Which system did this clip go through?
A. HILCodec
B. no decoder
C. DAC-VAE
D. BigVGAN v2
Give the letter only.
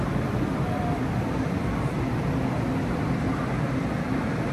D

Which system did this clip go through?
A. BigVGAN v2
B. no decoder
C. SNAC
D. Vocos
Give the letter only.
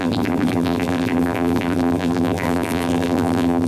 A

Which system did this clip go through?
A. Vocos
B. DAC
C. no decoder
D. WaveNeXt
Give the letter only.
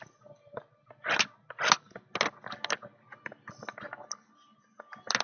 C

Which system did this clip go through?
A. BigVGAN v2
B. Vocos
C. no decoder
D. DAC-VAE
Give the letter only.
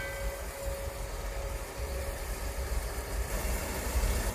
C